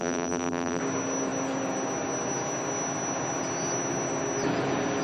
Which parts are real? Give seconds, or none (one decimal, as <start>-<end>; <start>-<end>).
0.8-5.0